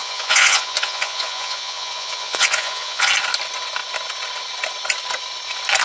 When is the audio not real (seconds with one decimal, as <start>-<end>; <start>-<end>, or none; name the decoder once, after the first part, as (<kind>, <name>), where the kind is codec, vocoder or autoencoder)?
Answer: 0.0-3.1 (vocoder, Vocos)

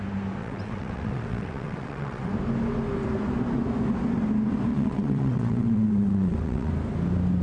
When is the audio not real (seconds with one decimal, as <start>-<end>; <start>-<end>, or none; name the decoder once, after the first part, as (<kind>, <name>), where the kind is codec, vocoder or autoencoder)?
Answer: 0.4-2.3 (vocoder, WaveNeXt); 4.7-6.7

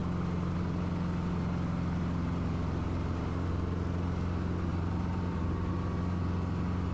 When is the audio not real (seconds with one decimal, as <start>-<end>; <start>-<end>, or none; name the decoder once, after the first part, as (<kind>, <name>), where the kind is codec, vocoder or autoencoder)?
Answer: 4.7-5.7 (vocoder, BigVGAN v2)

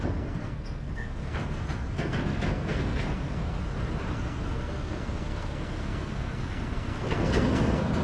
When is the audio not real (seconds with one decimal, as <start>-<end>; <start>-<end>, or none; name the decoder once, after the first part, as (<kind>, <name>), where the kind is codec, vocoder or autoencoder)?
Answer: 0.0-3.6 (codec, SNAC); 4.1-8.0

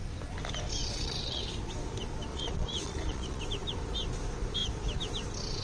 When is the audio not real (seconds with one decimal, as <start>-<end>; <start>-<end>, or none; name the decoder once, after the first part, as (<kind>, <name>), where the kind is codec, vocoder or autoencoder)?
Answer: 0.8-1.4 (vocoder, Vocos); 2.3-3.4